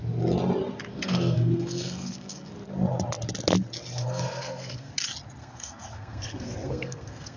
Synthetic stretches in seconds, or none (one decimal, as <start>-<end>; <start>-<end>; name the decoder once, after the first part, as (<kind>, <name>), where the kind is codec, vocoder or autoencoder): 0.9-2.5 (codec, SNAC); 3.9-4.9; 5.4-7.4